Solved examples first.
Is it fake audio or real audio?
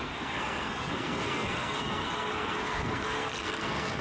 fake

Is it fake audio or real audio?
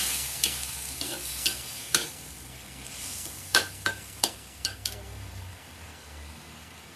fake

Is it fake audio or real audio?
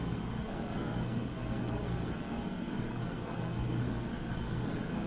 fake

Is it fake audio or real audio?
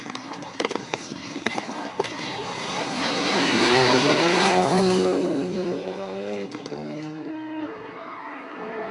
fake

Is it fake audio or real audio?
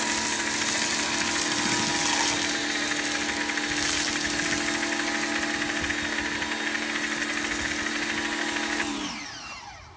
real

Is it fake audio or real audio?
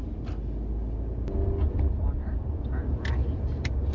real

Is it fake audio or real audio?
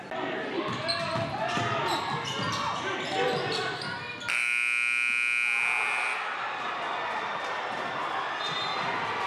real